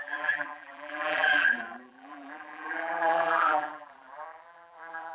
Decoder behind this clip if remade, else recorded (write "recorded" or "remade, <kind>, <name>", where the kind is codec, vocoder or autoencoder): remade, vocoder, BigVGAN v2